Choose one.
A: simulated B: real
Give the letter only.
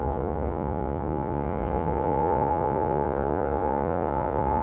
A